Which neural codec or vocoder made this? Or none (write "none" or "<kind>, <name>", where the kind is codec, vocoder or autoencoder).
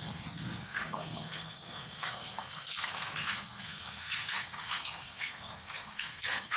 codec, SNAC